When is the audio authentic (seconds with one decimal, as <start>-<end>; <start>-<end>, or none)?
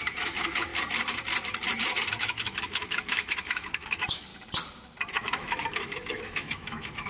0.7-2.2; 4.3-5.1